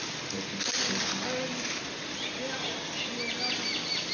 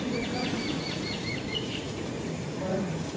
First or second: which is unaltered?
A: first